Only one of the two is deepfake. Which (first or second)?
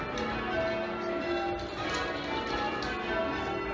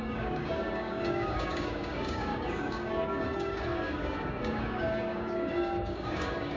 second